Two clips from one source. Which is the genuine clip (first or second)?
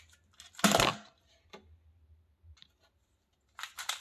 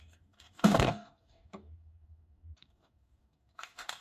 first